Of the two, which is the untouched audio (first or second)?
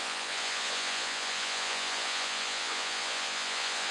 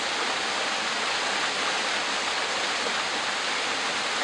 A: second